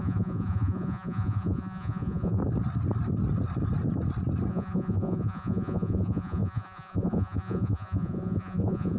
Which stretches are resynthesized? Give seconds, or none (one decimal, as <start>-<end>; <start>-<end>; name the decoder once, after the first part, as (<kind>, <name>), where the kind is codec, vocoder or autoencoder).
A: 0.0-2.4 (vocoder, Vocos); 4.5-9.0